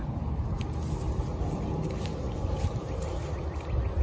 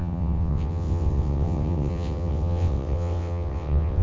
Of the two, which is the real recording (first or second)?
first